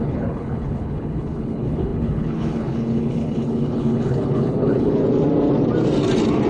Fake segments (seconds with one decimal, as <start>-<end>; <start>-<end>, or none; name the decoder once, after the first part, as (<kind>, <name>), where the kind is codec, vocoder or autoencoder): 0.0-5.0 (codec, HILCodec)